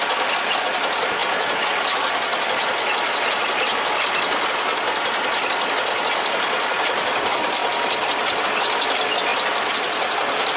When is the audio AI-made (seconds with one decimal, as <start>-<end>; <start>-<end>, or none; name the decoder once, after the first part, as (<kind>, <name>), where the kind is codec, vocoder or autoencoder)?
9.3-10.6 (vocoder, BigVGAN v2)